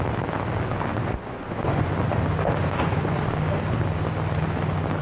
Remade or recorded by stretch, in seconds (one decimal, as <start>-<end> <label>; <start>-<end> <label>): 0.0-0.9 recorded; 0.9-1.9 remade; 1.9-2.6 recorded; 2.6-3.3 remade; 3.3-5.0 recorded